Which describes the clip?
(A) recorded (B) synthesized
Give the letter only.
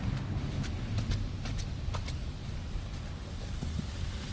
A